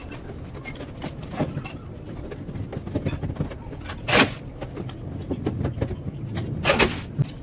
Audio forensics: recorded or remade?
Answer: recorded